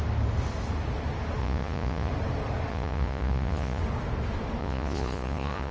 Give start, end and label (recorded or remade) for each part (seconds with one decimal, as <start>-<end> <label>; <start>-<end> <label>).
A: 0.0-1.4 recorded; 1.4-2.1 remade; 2.1-2.7 recorded; 2.7-3.8 remade; 3.8-4.6 recorded; 4.6-5.7 remade